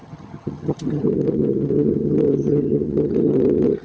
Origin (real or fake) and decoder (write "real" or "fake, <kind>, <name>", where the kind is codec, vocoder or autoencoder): fake, vocoder, HiFi-GAN